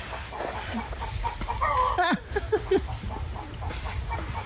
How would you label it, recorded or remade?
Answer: recorded